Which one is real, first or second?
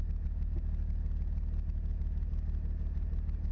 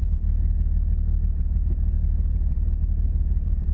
first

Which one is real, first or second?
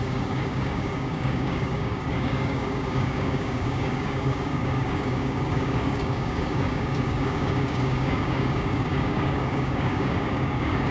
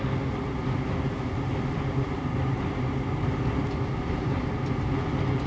second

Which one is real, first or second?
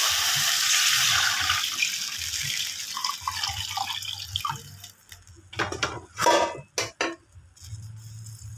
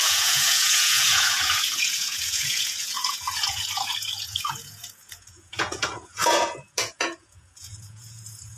first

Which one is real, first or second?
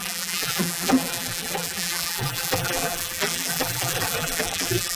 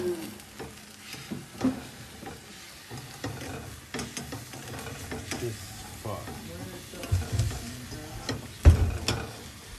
second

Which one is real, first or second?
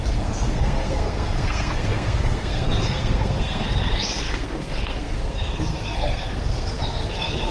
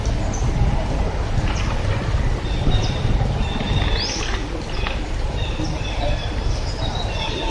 second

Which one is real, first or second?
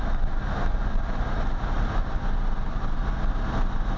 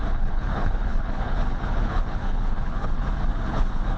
first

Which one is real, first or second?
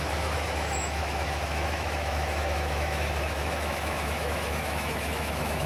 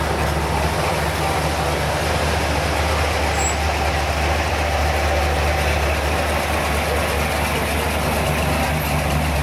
second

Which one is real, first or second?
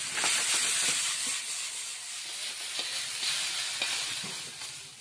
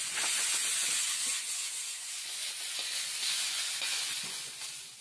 first